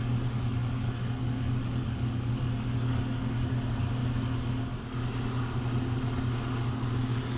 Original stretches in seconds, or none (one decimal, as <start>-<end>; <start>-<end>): 4.0-6.7